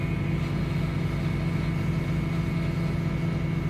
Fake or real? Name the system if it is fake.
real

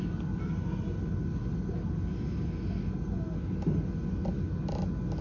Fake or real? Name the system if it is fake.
real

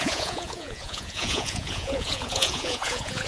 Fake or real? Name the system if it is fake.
fake, vocoder, Vocos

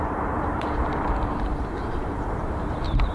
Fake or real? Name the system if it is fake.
fake, vocoder, BigVGAN v2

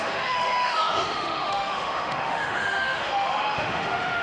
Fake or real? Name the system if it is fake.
fake, autoencoder, DAC-VAE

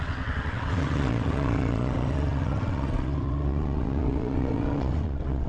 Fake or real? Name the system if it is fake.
fake, vocoder, WaveNeXt